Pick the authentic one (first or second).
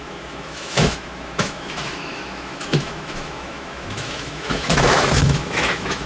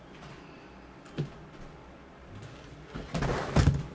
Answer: second